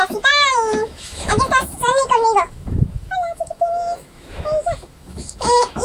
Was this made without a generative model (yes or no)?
no